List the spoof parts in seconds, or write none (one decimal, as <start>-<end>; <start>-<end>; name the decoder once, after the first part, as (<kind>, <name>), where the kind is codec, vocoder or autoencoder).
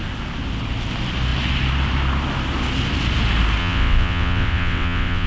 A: 3.6-5.3 (vocoder, WaveNeXt)